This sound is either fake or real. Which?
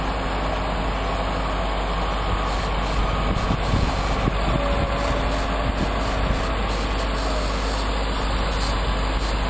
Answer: real